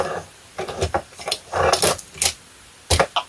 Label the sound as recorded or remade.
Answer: recorded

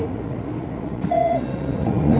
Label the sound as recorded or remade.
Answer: remade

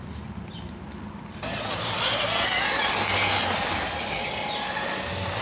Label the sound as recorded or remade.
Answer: recorded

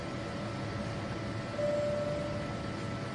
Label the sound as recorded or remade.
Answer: recorded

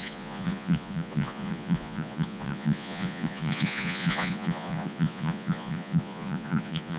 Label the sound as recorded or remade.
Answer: remade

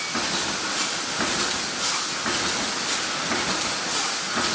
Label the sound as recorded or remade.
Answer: recorded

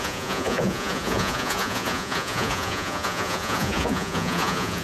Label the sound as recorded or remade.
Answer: remade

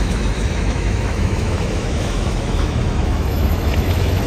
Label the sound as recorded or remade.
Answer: remade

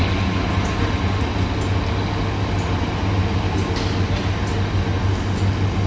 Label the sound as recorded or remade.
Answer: recorded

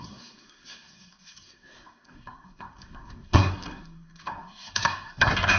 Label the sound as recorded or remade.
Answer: remade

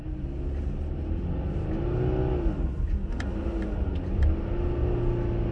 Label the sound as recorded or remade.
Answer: recorded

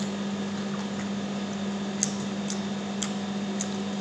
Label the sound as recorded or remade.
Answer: recorded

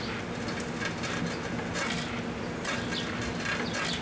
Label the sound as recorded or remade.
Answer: recorded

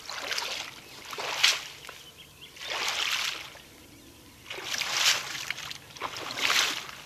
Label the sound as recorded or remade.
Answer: recorded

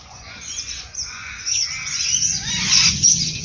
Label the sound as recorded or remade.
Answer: remade